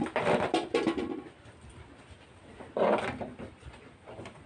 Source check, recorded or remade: recorded